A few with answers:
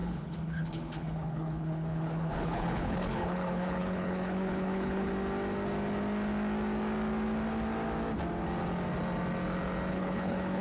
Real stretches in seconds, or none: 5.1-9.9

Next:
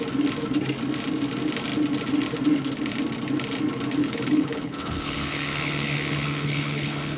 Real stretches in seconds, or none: 0.0-4.0

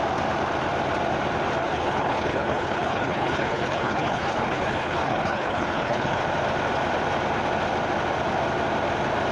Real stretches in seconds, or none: 0.0-1.6; 6.2-9.3